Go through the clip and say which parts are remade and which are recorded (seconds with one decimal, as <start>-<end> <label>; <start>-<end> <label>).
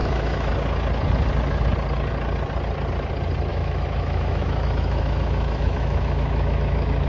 0.0-0.5 remade; 0.5-3.5 recorded; 3.5-7.1 remade